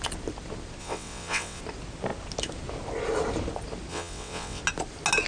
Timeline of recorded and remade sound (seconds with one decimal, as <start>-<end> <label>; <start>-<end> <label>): 0.0-0.8 recorded; 0.8-1.6 remade; 1.6-3.9 recorded; 3.9-4.6 remade; 4.6-5.3 recorded